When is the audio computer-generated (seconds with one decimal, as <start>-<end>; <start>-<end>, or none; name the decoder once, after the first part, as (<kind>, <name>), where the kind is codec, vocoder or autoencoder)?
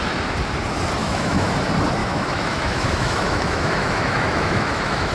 1.0-1.5 (autoencoder, DAC-VAE); 2.0-5.1